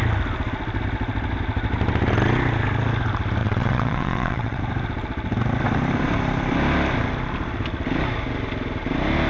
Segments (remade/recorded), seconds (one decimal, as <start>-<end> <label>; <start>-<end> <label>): 0.0-3.4 recorded; 3.4-4.6 remade; 4.6-9.3 recorded